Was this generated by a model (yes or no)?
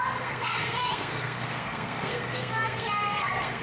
yes